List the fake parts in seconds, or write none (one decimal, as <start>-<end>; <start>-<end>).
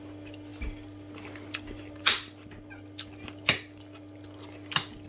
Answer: none